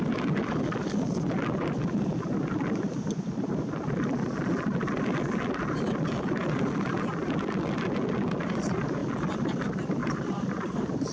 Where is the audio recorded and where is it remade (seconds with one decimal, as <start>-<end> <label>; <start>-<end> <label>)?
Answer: 0.0-10.0 recorded; 10.0-11.1 remade